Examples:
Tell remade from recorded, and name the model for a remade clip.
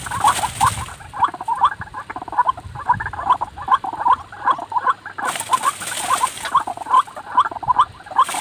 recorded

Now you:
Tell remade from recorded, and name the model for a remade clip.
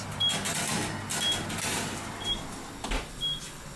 recorded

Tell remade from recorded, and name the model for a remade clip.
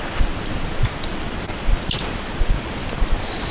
remade, vocoder, BigVGAN v2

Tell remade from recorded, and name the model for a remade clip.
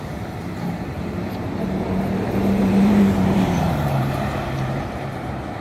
remade, vocoder, BigVGAN v2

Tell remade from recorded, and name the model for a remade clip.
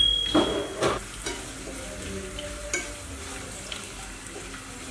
recorded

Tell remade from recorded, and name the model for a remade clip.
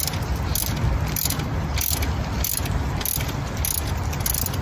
recorded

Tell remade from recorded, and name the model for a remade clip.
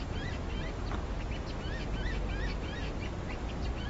recorded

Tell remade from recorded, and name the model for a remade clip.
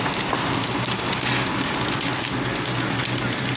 recorded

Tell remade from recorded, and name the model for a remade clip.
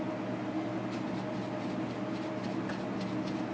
recorded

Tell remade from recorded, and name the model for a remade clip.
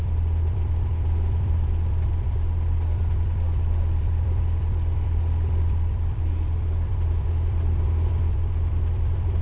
remade, vocoder, BigVGAN v2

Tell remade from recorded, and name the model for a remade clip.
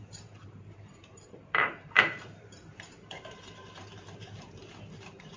remade, vocoder, BigVGAN v2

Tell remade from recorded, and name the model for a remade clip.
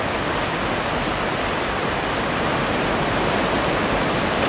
remade, vocoder, BigVGAN v2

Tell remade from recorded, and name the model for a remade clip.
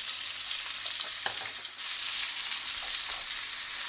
recorded